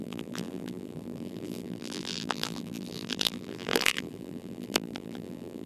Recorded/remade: remade